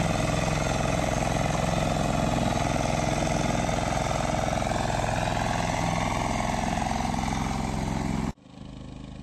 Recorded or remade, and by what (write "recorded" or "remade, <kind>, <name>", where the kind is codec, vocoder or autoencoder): recorded